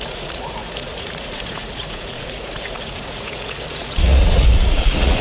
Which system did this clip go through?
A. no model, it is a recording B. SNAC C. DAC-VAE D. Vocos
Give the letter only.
D